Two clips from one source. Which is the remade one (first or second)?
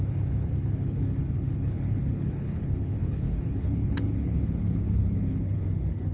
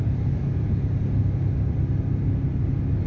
first